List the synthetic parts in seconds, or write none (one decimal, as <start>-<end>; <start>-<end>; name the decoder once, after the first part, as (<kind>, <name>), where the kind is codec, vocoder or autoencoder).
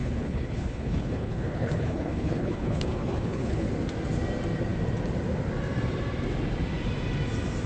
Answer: 0.0-3.7 (codec, HILCodec)